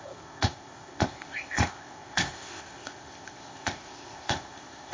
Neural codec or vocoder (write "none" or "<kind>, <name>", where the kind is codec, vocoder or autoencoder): codec, ZipCodec